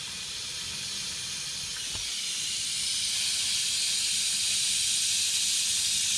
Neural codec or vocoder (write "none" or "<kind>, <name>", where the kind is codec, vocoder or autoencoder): none